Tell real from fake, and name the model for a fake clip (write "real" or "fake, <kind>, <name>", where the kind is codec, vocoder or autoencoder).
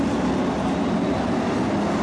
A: real